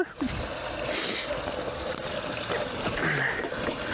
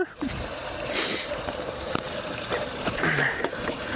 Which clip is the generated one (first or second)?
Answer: second